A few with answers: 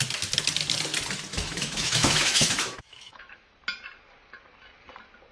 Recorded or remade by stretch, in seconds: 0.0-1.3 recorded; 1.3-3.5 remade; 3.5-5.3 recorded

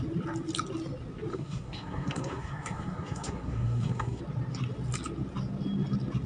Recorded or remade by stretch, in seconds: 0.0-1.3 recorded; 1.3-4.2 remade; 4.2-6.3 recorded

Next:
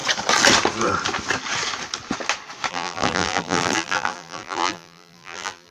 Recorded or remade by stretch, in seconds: 0.0-2.7 recorded; 2.7-5.7 remade